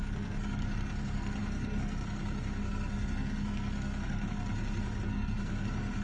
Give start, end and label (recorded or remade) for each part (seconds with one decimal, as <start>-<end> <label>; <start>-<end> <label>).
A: 0.0-6.0 remade

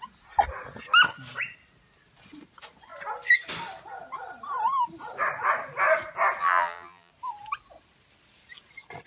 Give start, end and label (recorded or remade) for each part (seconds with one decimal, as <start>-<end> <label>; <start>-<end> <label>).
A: 0.0-6.4 recorded; 6.4-7.1 remade; 7.1-9.1 recorded

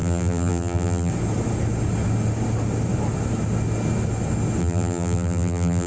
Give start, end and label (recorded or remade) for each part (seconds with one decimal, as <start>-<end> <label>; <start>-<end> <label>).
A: 0.0-1.1 remade; 1.1-4.6 recorded; 4.6-5.9 remade

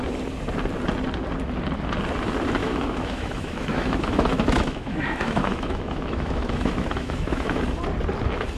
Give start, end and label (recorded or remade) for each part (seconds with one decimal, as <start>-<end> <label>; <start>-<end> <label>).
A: 0.0-2.6 recorded; 2.6-7.6 remade; 7.6-8.6 recorded

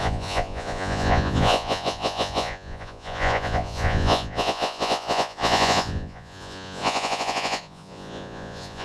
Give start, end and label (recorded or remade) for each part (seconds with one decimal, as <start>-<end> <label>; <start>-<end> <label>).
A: 0.0-8.8 remade

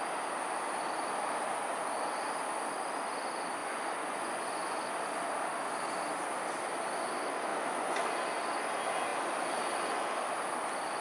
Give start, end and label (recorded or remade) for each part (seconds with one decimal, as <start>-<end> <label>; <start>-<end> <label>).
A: 0.0-3.6 recorded; 3.6-4.9 remade; 4.9-7.5 recorded; 7.5-8.0 remade; 8.0-11.0 recorded